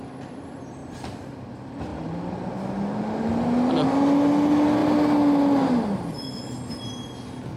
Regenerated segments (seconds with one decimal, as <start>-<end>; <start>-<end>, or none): 0.8-1.5